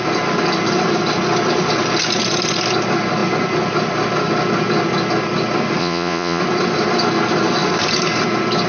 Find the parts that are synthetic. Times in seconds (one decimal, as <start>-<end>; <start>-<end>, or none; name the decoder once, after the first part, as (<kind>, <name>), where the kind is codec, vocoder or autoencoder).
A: 5.8-6.4 (vocoder, Vocos)